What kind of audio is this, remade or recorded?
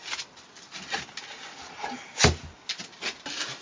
recorded